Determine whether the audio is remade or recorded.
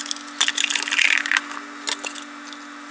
recorded